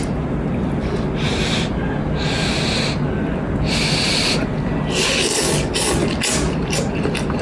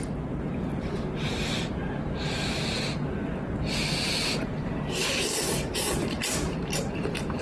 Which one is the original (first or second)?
first